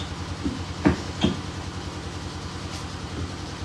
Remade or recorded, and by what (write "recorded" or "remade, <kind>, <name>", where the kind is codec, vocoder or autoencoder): recorded